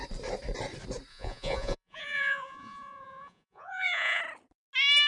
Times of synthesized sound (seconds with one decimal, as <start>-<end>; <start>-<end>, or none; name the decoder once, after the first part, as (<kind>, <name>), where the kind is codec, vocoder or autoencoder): 1.1-4.2 (vocoder, Vocos)